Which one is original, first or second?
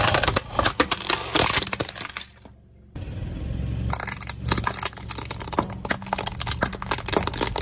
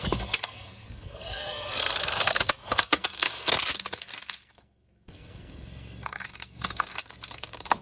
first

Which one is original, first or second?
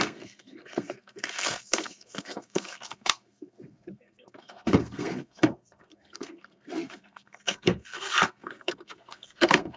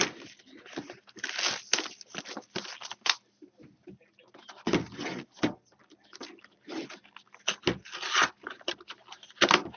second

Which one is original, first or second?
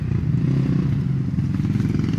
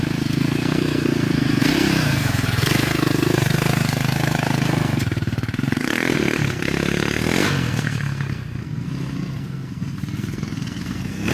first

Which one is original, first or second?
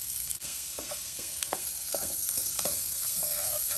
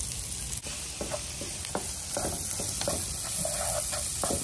second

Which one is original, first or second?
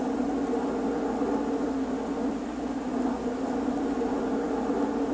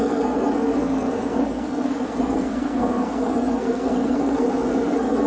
first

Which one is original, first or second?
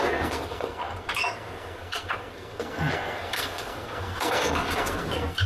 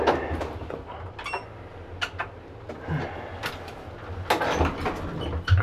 second